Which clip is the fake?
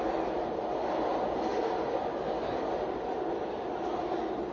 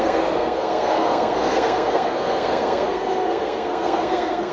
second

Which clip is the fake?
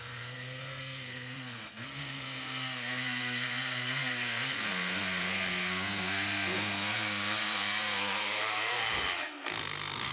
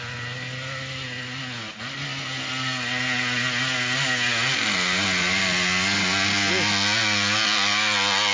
first